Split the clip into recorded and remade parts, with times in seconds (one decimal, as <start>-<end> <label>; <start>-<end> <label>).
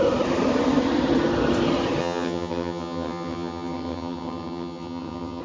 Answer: 0.0-2.0 recorded; 2.0-5.4 remade